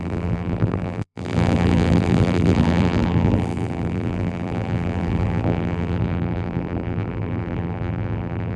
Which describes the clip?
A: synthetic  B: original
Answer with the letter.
A